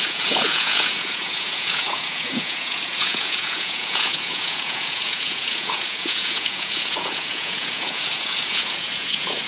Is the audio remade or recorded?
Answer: remade